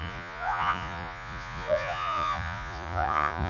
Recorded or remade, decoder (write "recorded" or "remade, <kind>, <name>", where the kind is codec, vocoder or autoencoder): remade, vocoder, Vocos